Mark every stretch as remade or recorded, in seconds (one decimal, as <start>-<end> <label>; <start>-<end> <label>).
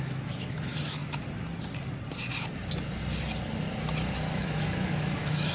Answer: 0.0-1.0 remade; 1.0-4.3 recorded; 4.3-5.5 remade